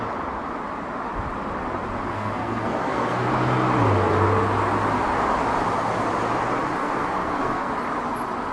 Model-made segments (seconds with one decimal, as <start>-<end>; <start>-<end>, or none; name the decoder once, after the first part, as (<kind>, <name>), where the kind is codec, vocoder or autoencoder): 2.1-3.3 (codec, SNAC); 6.8-7.7